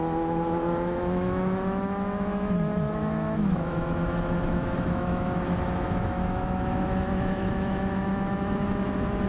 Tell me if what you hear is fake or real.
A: fake